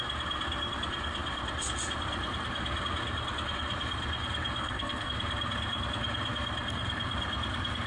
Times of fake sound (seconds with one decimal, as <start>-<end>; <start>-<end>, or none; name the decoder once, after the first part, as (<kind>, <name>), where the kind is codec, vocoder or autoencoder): 4.6-5.1 (codec, SNAC)